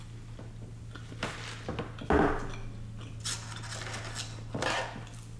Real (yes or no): yes